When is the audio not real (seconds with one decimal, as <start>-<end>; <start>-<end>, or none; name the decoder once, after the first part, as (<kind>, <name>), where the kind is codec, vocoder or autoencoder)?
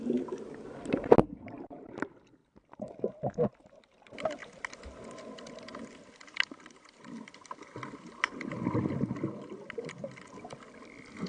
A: none